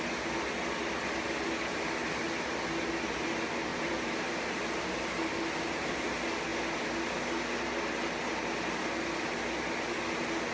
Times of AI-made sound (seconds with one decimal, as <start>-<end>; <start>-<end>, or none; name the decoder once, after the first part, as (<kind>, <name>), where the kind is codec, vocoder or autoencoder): 3.7-6.1 (vocoder, BigVGAN v2)